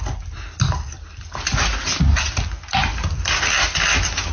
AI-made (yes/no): no